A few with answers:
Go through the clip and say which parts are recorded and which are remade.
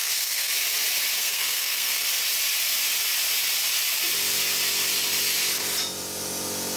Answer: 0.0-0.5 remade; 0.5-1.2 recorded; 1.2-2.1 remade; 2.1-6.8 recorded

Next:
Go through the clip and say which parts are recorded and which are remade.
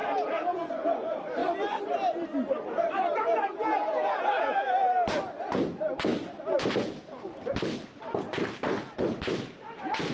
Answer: 0.0-0.7 remade; 0.7-3.6 recorded; 3.6-4.3 remade; 4.3-10.1 recorded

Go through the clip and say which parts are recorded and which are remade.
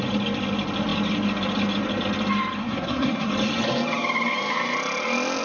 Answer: 0.0-2.6 recorded; 2.6-3.3 remade; 3.3-5.4 recorded